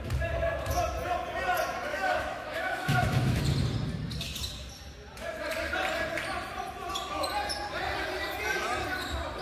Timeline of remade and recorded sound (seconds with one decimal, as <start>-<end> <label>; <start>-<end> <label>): 0.0-1.9 recorded; 1.9-3.4 remade; 3.4-9.4 recorded

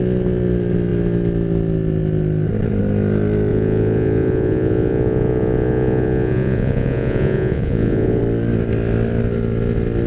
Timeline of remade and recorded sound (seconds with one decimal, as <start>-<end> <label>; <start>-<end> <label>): 0.0-3.5 recorded; 3.5-8.2 remade; 8.2-10.1 recorded

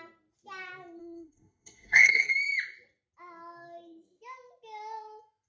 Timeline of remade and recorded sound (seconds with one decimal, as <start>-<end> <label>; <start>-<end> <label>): 0.0-1.0 recorded; 1.0-2.3 remade; 2.3-5.5 recorded

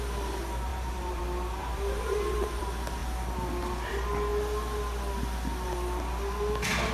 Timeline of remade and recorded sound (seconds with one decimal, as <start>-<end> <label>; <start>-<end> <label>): 0.0-0.7 recorded; 0.7-1.2 remade; 1.2-1.6 recorded; 1.6-2.6 remade; 2.6-6.9 recorded

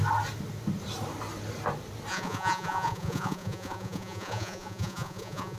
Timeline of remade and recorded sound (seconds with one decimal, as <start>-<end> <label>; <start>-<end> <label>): 0.0-2.1 recorded; 2.1-5.6 remade

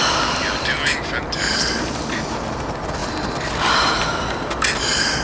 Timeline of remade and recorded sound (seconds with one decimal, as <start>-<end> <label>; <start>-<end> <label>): 0.0-1.9 remade; 1.9-3.0 recorded; 3.0-3.9 remade; 3.9-5.2 recorded